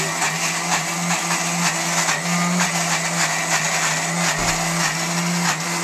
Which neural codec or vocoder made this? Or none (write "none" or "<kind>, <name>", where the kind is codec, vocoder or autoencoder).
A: none